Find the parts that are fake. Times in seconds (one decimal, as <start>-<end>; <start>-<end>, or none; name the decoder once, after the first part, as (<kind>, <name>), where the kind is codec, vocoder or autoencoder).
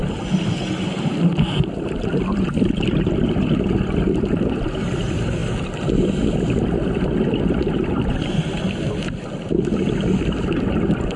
none